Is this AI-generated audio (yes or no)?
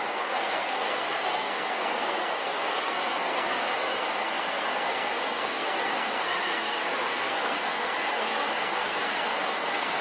yes